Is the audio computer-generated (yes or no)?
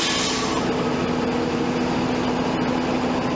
no